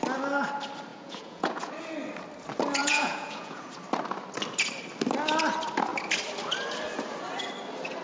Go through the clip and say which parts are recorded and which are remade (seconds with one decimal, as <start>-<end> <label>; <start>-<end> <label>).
0.0-0.9 recorded; 0.9-1.7 remade; 1.7-2.8 recorded; 2.8-3.7 remade; 3.7-8.0 recorded